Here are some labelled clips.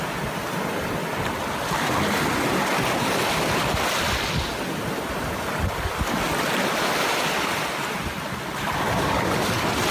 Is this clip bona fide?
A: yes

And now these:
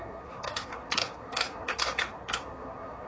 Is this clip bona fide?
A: no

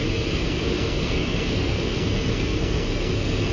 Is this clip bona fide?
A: no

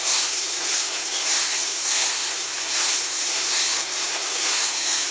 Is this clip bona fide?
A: no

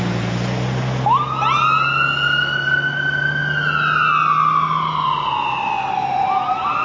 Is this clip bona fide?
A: yes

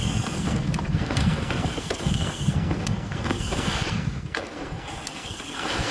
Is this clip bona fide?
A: no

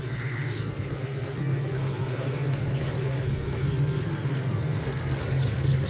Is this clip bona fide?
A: no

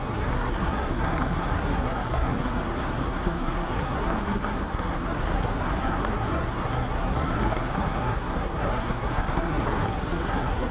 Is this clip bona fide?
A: no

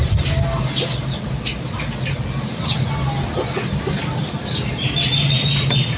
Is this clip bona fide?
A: yes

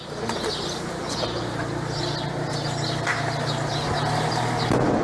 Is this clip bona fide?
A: yes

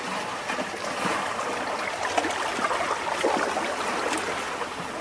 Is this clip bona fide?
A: yes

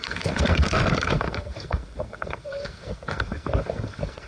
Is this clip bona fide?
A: no